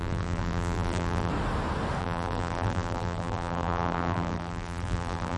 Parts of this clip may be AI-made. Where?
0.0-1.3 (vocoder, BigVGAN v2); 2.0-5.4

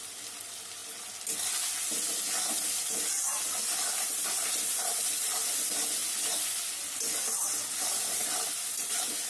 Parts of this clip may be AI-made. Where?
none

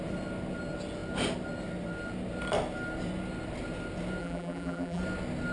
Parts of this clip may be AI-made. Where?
4.2-5.0 (vocoder, BigVGAN v2)

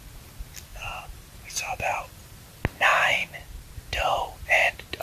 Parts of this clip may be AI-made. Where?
0.7-2.4 (vocoder, BigVGAN v2)

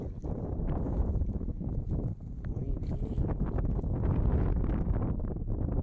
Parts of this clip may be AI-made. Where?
none